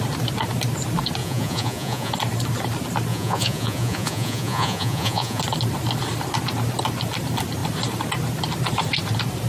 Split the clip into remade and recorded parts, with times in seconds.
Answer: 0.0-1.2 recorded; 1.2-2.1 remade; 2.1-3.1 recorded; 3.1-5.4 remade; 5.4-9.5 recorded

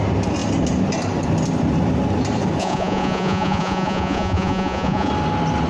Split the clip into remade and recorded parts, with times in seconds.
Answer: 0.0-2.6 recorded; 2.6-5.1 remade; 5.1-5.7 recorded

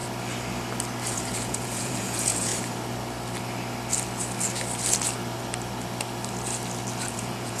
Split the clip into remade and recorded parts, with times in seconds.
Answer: 0.0-1.1 recorded; 1.1-2.5 remade; 2.5-7.1 recorded; 7.1-7.6 remade